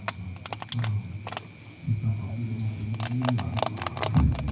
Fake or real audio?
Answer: real